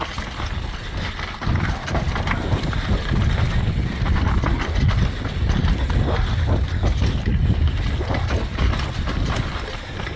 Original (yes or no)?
yes